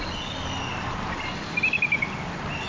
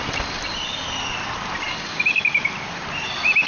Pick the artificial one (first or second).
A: second